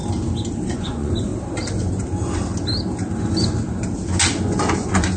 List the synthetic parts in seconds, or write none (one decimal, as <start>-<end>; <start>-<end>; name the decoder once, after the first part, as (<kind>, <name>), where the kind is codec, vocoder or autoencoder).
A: 0.7-1.3 (vocoder, Vocos); 4.4-5.2